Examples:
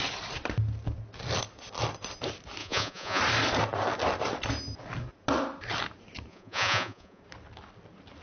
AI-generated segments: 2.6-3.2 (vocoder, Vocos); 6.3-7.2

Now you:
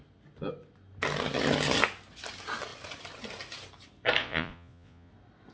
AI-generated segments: 4.2-5.1 (vocoder, Vocos)

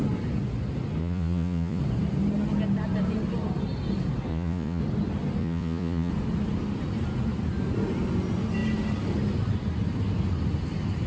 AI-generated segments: 1.0-1.8 (vocoder, Vocos); 4.3-4.8; 5.4-6.1

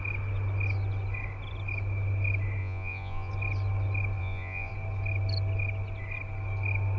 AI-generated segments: 2.6-3.3 (vocoder, Vocos); 4.2-4.7

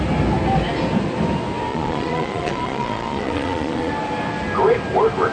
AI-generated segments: 1.7-3.9 (vocoder, Vocos)

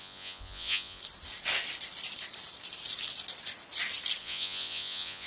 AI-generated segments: 0.0-1.0 (vocoder, Vocos); 4.2-5.3

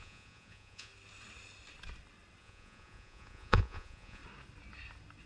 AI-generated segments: 0.0-0.9 (vocoder, Vocos); 2.4-4.2

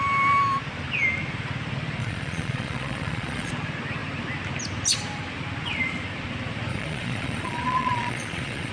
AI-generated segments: 2.0-3.5 (vocoder, Vocos); 6.7-8.7